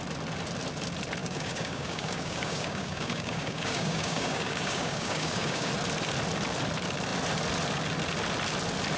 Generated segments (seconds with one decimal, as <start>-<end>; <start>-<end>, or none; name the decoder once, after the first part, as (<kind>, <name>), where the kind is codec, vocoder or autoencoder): 1.2-5.7 (codec, DAC)

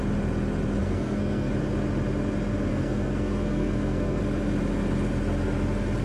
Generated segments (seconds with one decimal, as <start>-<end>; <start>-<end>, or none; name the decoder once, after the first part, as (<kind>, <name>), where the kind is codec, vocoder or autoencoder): 0.8-1.5 (codec, SNAC); 2.7-4.2